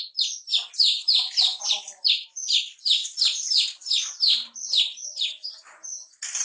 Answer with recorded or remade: remade